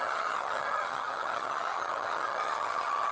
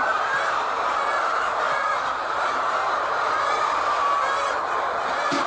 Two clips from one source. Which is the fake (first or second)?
first